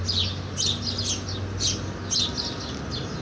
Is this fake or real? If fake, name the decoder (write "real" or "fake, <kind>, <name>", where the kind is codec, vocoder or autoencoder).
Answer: real